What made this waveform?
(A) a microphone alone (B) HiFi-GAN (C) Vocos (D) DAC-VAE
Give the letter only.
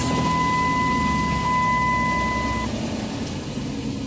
A